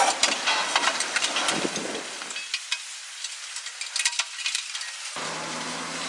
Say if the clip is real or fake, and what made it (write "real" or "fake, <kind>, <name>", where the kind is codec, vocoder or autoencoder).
real